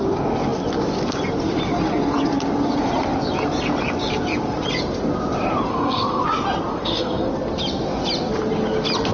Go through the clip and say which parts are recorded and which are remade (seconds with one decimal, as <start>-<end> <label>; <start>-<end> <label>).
0.0-5.7 recorded; 5.7-6.2 remade; 6.2-6.7 recorded; 6.7-7.3 remade; 7.3-9.1 recorded